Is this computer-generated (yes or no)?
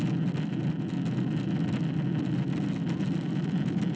no